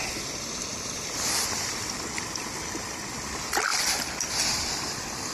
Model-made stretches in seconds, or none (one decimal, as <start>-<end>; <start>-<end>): none